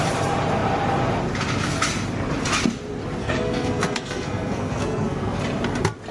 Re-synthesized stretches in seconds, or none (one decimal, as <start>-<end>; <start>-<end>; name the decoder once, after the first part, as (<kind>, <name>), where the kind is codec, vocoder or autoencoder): 3.2-5.4 (codec, SNAC)